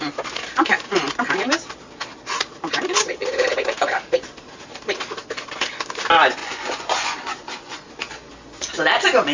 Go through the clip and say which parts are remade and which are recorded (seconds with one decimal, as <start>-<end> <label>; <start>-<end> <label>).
0.0-6.4 recorded; 6.4-7.9 remade; 7.9-9.3 recorded